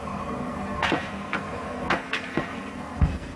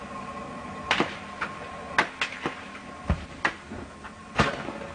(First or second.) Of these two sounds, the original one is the second